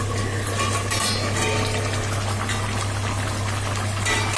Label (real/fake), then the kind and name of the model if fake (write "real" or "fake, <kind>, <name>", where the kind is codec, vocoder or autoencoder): real